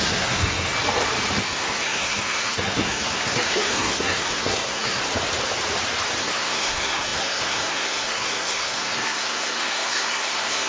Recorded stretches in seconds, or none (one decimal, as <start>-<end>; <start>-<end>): 0.7-1.4; 5.0-6.2